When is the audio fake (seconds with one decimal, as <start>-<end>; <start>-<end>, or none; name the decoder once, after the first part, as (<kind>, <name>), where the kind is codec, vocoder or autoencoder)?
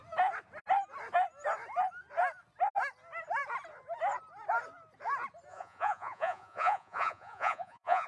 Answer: 5.5-8.1 (vocoder, Vocos)